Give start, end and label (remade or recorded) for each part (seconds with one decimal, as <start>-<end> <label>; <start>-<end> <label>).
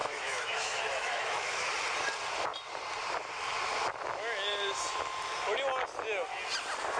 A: 0.0-1.7 remade; 1.7-7.0 recorded